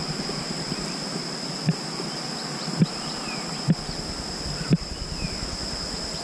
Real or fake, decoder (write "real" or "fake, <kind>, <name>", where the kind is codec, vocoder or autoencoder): real